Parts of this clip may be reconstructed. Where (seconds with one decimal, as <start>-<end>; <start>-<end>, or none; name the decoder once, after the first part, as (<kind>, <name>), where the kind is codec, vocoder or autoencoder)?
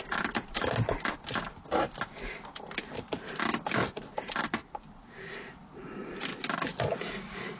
none